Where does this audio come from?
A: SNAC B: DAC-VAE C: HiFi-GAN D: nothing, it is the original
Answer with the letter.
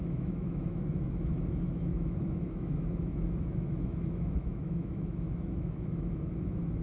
B